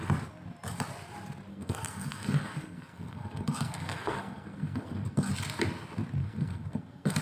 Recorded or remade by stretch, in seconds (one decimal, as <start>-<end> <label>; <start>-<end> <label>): 0.0-1.5 recorded; 1.5-5.3 remade; 5.3-6.2 recorded; 6.2-7.2 remade